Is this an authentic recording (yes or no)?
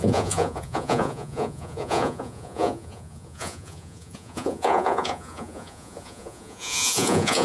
no